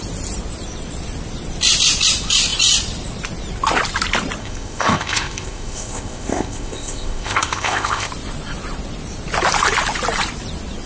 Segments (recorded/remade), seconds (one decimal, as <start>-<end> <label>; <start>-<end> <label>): 0.0-4.4 recorded; 4.4-8.1 remade; 8.1-10.9 recorded